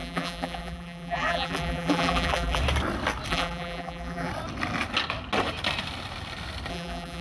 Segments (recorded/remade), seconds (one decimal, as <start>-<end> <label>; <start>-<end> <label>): 0.0-2.6 remade; 2.6-3.3 recorded; 3.3-4.3 remade; 4.3-6.7 recorded; 6.7-7.2 remade